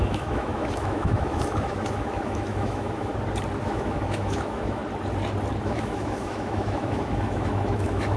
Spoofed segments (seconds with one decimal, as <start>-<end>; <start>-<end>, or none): 0.0-3.1; 3.6-4.8; 5.6-8.2